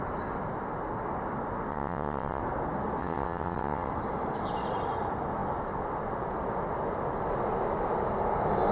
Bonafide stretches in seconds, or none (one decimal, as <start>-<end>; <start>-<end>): 0.0-1.7; 2.4-3.0; 3.9-8.7